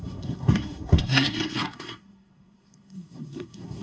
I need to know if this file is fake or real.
fake